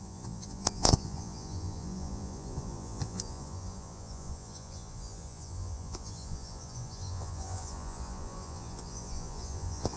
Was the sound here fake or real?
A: fake